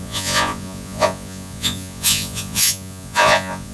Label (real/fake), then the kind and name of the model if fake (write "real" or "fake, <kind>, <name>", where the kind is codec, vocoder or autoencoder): fake, vocoder, Vocos